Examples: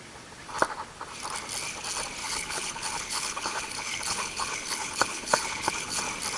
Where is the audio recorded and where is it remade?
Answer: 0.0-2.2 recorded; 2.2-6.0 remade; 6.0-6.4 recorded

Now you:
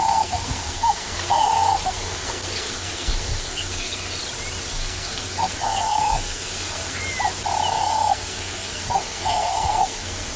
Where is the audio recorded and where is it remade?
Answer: 0.0-4.2 remade; 4.2-4.7 recorded; 4.7-7.0 remade; 7.0-7.7 recorded; 7.7-10.4 remade

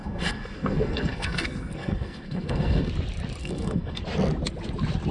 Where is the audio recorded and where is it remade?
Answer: 0.0-2.9 remade; 2.9-3.4 recorded; 3.4-4.0 remade; 4.0-5.1 recorded

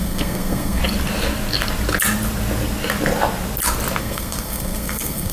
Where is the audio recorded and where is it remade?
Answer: 0.0-0.8 remade; 0.8-4.0 recorded; 4.0-5.3 remade

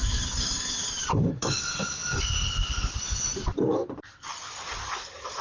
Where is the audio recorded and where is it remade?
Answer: 0.0-1.0 recorded; 1.0-1.6 remade; 1.6-5.4 recorded

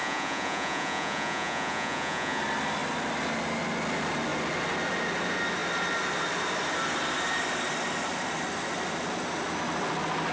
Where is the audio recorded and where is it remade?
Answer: 0.0-2.4 remade; 2.4-10.3 recorded